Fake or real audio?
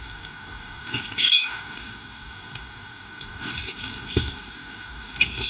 fake